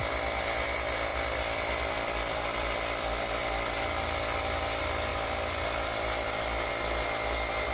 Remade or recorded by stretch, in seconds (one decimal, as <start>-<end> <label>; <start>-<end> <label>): 0.0-1.1 recorded; 1.1-3.4 remade; 3.4-5.1 recorded; 5.1-6.7 remade; 6.7-7.7 recorded